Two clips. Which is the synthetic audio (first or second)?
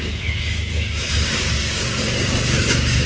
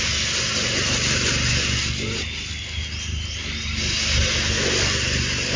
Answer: first